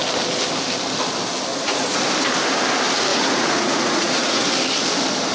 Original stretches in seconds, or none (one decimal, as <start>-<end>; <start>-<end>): 0.0-1.5; 2.0-3.1; 4.5-5.3